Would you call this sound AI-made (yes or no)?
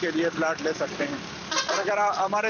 no